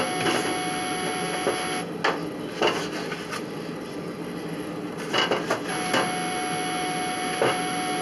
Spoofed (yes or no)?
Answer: no